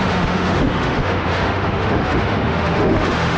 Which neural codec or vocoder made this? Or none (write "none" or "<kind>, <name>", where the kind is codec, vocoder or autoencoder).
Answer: autoencoder, DAC-VAE